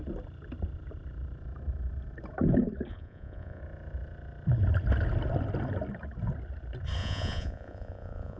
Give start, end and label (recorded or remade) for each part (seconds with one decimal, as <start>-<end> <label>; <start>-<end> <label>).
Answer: 0.0-2.9 recorded; 2.9-3.6 remade; 3.6-7.0 recorded; 7.0-8.4 remade